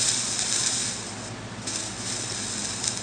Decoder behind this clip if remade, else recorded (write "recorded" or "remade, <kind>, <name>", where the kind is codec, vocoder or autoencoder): recorded